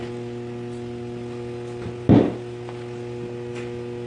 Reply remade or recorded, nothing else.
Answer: recorded